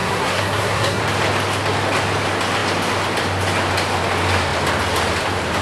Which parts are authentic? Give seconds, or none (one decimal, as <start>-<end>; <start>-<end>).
1.0-5.6